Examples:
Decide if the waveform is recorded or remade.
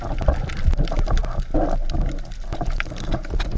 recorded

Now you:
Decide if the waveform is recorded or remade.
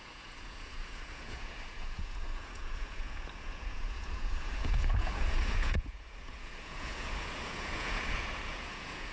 remade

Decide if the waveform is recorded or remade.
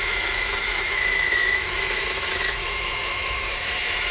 remade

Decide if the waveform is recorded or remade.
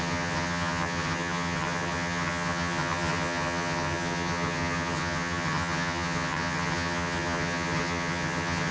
remade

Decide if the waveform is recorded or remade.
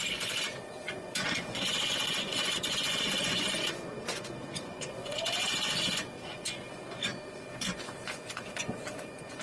remade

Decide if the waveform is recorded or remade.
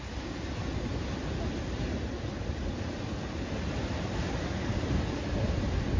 recorded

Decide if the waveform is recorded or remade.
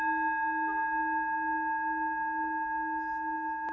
recorded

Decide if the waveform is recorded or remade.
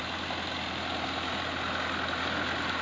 recorded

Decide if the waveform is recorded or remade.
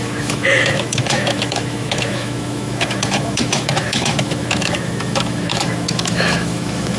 remade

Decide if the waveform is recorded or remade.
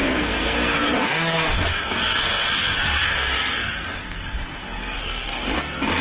remade